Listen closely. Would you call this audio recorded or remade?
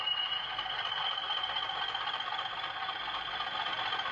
recorded